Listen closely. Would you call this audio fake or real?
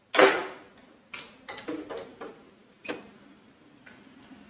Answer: real